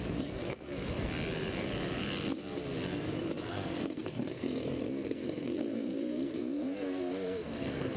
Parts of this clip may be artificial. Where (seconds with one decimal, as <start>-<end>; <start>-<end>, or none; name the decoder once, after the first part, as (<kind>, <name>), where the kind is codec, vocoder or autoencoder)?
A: 0.0-1.1 (codec, SNAC); 3.5-8.0

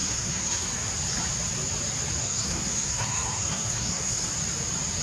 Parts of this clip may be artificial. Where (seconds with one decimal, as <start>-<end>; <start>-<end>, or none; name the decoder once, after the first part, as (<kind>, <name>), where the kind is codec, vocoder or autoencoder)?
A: 0.0-0.9 (codec, SNAC); 2.2-4.3

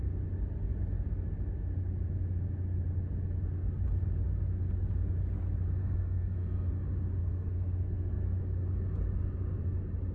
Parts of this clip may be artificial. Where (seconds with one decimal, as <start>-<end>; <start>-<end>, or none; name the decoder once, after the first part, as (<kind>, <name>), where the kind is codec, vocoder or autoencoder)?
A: 5.8-6.7 (codec, SNAC); 7.2-8.2

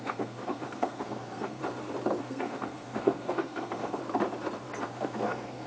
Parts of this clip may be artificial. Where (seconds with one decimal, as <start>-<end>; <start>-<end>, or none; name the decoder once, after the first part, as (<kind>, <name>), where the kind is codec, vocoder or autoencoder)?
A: 0.0-1.6 (codec, SNAC); 2.2-4.0; 4.8-5.7

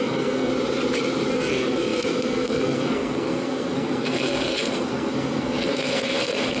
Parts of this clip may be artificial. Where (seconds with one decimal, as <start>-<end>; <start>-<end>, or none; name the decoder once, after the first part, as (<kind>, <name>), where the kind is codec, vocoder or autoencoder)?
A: 0.0-0.5 (codec, SNAC); 1.3-6.6

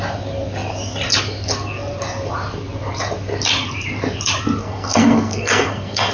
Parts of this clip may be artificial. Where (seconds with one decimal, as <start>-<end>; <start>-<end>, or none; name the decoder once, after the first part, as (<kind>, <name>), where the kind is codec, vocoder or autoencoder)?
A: 4.6-6.1 (codec, SNAC)

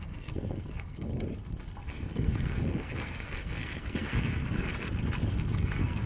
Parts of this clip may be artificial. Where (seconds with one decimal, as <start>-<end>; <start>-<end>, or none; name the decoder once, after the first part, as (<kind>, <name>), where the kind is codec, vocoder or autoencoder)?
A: 0.0-1.1 (codec, SNAC); 1.9-4.7; 5.3-6.1

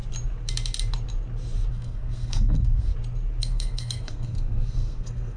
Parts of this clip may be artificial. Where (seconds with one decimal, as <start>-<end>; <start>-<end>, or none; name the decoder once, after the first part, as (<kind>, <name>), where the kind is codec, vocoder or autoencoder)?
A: 1.7-2.9 (codec, SNAC); 3.4-5.4